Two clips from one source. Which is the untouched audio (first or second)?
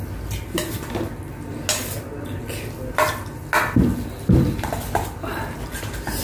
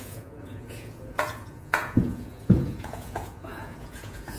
first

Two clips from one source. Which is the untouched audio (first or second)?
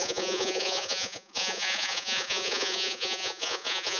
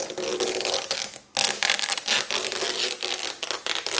second